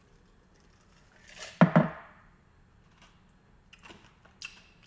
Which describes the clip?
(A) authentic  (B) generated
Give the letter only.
A